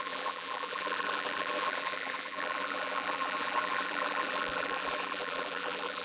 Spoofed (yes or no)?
yes